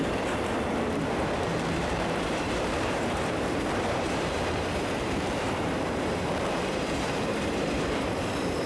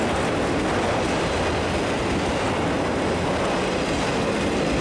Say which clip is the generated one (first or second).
first